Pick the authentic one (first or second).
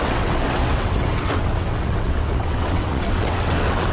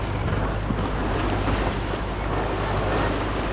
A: second